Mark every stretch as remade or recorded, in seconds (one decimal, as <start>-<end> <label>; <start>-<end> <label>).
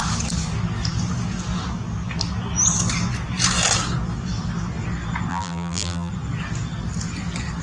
0.0-5.3 recorded; 5.3-6.1 remade; 6.1-7.6 recorded